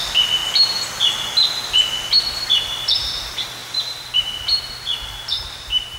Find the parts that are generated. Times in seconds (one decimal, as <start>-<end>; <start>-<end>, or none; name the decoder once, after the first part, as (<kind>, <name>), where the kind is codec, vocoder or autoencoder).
3.6-4.2 (vocoder, BigVGAN v2)